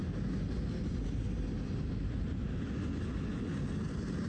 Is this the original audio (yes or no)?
yes